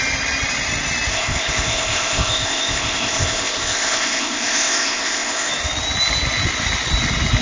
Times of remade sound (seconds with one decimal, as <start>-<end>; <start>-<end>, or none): 1.1-5.5